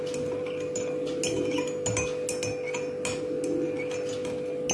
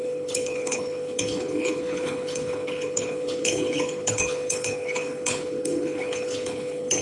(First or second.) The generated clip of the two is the second